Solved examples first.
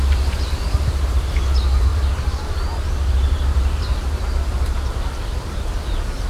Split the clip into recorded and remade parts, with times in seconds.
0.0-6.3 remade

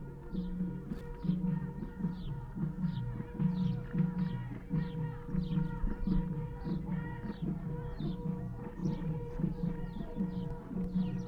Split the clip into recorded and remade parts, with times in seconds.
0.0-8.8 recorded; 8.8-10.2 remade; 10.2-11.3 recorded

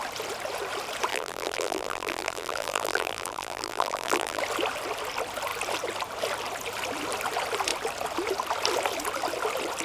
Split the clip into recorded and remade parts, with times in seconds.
0.0-1.1 recorded; 1.1-4.4 remade; 4.4-9.8 recorded